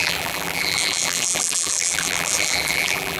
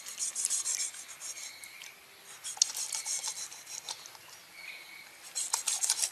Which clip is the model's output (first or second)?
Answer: first